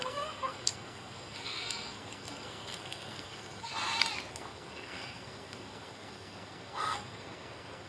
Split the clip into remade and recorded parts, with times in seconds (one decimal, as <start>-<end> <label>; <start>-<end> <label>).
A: 0.0-3.7 remade; 3.7-4.3 recorded; 4.3-7.9 remade